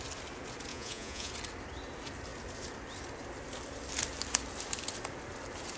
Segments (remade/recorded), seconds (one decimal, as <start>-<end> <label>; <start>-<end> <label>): 0.0-0.7 recorded; 0.7-1.3 remade; 1.3-5.8 recorded